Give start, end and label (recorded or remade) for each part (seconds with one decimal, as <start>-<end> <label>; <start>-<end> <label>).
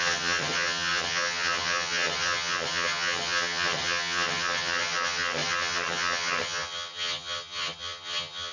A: 0.0-8.5 remade